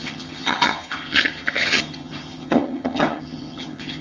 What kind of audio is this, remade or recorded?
remade